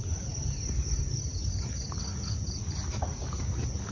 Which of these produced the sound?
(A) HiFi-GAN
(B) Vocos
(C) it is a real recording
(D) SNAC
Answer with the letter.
C